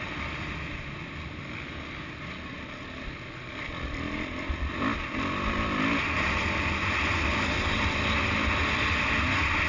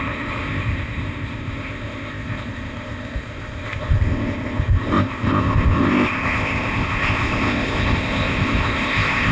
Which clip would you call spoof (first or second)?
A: second